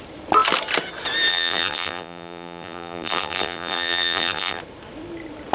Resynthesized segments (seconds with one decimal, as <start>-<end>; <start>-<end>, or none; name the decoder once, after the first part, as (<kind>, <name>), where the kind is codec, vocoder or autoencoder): 1.3-4.6 (vocoder, BigVGAN v2)